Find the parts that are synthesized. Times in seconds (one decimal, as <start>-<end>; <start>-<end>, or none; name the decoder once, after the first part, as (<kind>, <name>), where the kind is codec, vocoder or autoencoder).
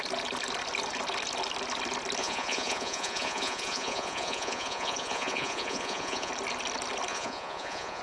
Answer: 2.2-6.3 (vocoder, Vocos); 7.1-8.0